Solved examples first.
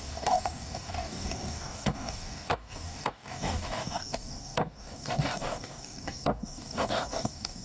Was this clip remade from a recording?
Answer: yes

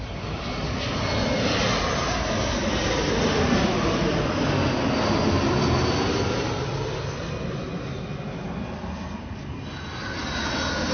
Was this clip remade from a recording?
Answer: no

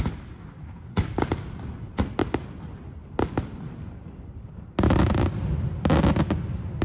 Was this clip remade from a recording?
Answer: no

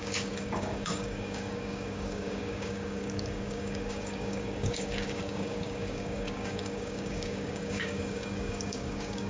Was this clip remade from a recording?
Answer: yes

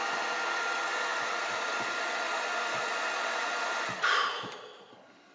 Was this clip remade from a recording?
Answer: no